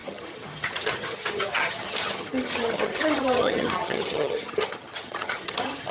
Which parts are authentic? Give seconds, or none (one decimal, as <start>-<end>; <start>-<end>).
none